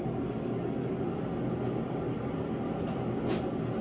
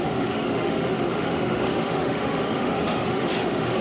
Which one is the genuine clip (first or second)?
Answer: first